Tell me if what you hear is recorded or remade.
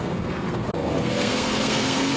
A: remade